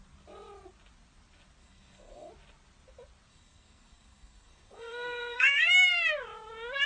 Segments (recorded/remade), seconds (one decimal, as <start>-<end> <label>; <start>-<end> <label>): 0.0-1.6 recorded; 1.6-2.3 remade; 2.3-3.3 recorded; 3.3-5.7 remade; 5.7-6.9 recorded